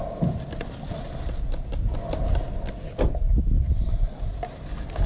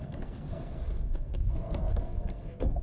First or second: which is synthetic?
second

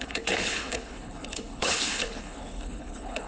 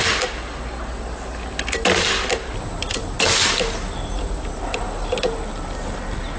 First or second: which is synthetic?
first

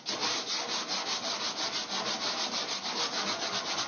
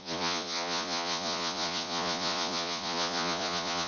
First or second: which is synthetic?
second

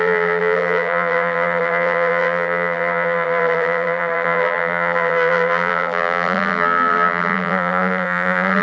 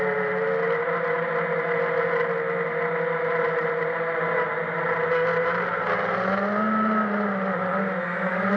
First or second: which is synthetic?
first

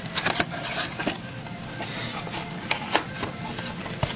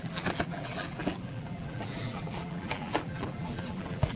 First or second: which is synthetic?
second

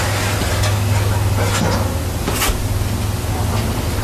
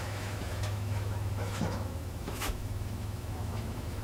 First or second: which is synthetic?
second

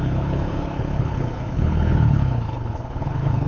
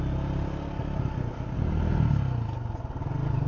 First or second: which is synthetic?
first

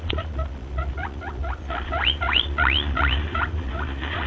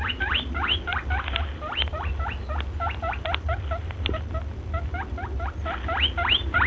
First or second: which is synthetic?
first